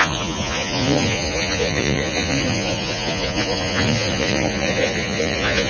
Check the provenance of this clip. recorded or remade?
remade